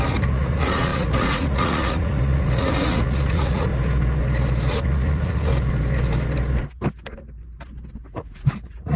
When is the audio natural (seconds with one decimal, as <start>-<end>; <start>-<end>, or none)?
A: 3.7-4.7; 5.5-8.1